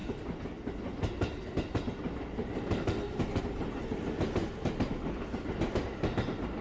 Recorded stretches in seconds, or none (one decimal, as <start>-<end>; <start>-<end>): 0.0-6.6